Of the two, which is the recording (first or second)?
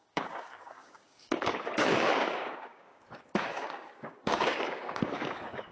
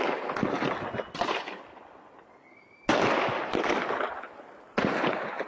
second